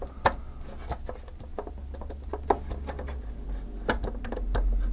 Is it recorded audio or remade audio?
recorded